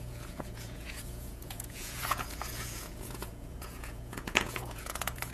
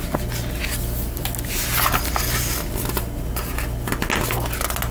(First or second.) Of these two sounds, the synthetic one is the first